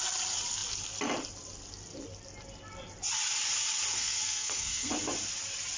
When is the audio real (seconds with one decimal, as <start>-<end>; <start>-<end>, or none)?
0.0-3.9; 4.9-5.8